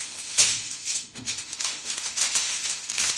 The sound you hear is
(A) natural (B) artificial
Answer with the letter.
B